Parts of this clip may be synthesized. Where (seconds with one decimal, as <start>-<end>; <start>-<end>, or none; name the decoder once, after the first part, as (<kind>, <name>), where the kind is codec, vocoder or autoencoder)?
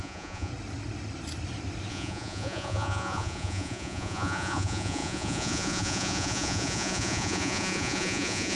0.0-0.5 (vocoder, Vocos); 1.9-8.6